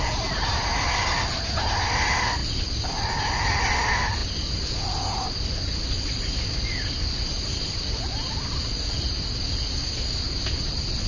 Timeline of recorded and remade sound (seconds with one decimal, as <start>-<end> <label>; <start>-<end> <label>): 0.0-11.1 recorded